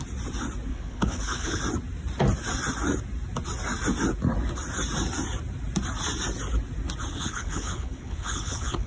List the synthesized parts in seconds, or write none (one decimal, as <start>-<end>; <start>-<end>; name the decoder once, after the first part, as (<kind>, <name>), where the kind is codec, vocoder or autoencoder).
0.7-1.6 (codec, HILCodec); 7.1-8.9

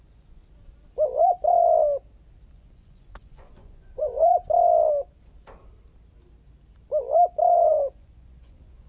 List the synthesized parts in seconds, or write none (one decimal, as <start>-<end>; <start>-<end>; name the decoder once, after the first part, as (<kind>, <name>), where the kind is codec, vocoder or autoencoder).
0.0-0.4 (vocoder, Vocos); 2.5-4.3; 7.5-8.9

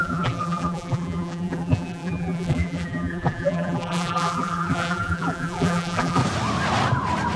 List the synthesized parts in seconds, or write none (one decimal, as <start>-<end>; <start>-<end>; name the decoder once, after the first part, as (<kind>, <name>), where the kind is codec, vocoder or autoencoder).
0.0-6.2 (vocoder, BigVGAN v2)

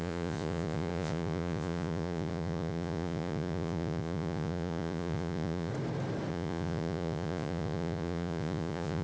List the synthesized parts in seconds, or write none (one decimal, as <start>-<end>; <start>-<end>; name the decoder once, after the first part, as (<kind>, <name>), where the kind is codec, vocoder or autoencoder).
0.0-5.7 (vocoder, Vocos); 6.3-9.0

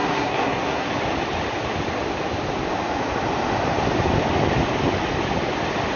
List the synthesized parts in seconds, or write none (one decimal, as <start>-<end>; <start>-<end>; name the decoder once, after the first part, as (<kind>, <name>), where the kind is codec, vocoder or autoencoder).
0.0-0.9 (codec, SNAC)